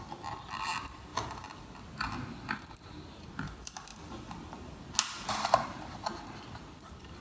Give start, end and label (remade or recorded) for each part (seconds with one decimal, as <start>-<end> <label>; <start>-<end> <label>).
0.0-1.1 remade; 1.1-2.7 recorded; 2.7-3.9 remade; 3.9-5.3 recorded; 5.3-7.2 remade